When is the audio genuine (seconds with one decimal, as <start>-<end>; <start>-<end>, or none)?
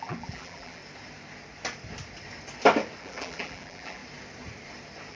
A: 0.8-3.0; 4.0-5.1